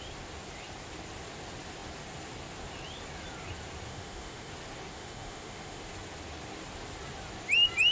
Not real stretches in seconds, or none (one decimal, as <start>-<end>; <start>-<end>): 3.9-4.5; 4.9-5.8

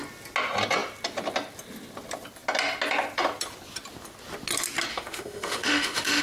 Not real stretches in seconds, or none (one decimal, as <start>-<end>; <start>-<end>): 4.9-6.2

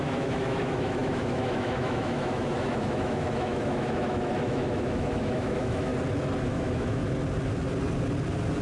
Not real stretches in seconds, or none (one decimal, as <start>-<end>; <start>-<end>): 0.0-5.9; 6.4-7.0